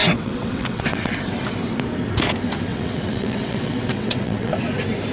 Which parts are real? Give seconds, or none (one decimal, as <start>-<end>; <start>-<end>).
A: 1.1-2.7; 4.5-5.1

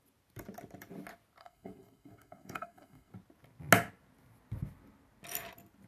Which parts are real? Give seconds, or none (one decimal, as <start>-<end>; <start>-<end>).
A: 0.0-1.4; 3.1-5.9